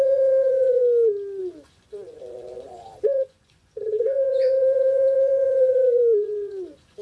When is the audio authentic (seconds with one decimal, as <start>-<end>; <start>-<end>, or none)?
0.8-1.4